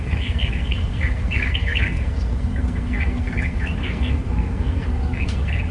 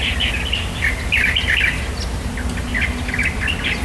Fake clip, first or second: first